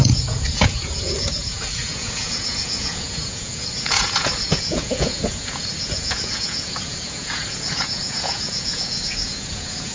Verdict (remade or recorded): remade